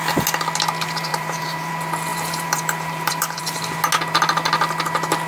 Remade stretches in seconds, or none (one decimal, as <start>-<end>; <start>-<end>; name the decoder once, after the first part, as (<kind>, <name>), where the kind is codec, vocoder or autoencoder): 1.1-1.7 (vocoder, BigVGAN v2); 2.1-3.4